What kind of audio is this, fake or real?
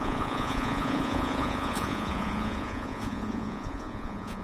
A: fake